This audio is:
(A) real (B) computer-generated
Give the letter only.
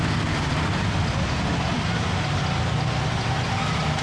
A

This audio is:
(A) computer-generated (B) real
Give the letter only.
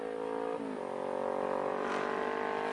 B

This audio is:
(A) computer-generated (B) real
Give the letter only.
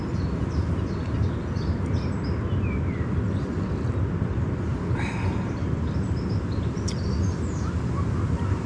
B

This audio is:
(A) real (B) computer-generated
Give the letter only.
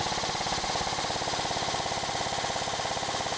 A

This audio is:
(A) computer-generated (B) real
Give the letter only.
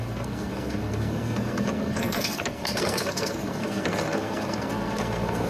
A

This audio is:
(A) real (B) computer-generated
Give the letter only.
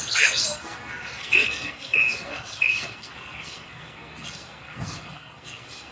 B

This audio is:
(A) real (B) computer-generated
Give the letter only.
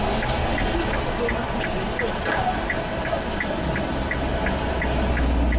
A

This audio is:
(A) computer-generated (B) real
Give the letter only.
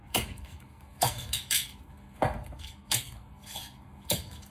A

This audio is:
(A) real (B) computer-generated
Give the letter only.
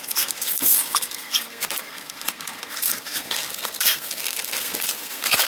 B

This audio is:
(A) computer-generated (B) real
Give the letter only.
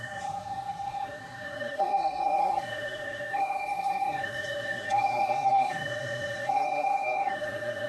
A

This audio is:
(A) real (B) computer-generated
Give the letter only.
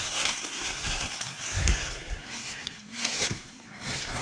B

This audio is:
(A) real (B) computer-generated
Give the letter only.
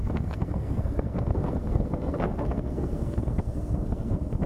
B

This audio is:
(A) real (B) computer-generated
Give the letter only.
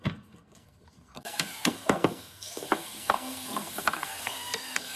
B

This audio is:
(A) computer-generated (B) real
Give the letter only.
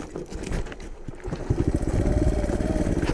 B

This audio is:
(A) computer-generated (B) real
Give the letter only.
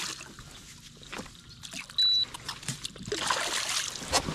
B